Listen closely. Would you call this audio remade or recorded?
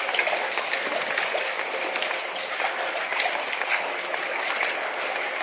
recorded